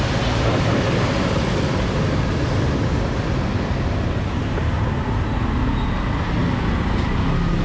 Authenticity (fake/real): real